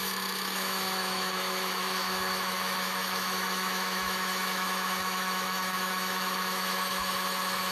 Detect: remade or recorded remade